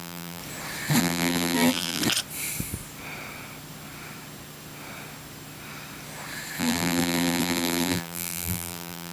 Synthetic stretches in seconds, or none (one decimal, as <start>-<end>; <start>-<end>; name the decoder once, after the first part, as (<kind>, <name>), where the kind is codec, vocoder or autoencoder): 0.0-0.4 (vocoder, BigVGAN v2); 1.0-2.0; 6.6-9.1